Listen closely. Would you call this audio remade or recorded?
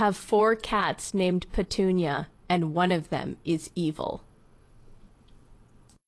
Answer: remade